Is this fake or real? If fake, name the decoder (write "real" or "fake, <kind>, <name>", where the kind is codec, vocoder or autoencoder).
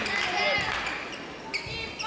real